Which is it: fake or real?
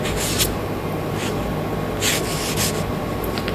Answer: real